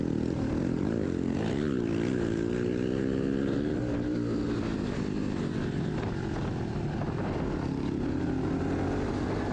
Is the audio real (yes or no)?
yes